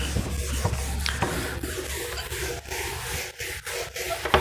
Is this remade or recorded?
recorded